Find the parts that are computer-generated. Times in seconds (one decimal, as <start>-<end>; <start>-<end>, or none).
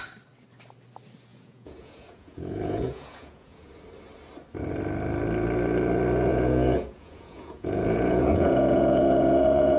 1.3-3.7; 6.3-9.8